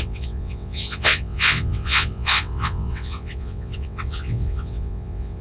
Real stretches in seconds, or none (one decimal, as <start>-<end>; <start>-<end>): none